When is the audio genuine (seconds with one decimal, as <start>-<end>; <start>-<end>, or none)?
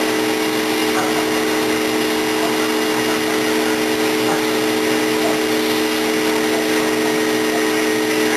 0.0-8.4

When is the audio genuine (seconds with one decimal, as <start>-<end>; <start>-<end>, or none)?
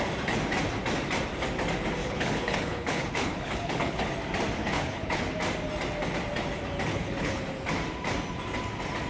0.0-2.0; 4.1-4.6; 5.2-6.9; 7.4-9.1